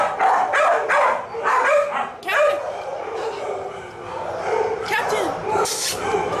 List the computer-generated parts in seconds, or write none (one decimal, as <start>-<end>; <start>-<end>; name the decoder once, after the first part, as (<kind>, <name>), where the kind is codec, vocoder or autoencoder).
2.9-6.4 (vocoder, BigVGAN v2)